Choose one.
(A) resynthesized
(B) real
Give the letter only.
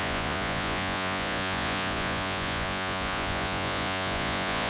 A